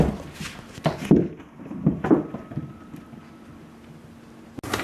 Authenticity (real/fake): real